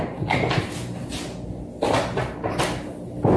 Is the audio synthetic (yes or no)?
no